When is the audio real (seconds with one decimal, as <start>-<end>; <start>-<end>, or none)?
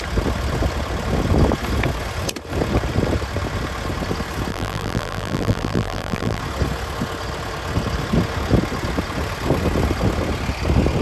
0.0-4.5; 6.4-11.0